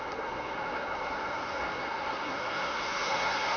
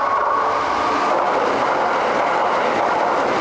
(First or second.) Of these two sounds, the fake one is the first